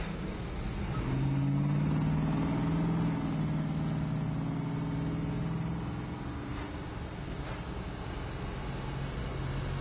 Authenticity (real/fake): real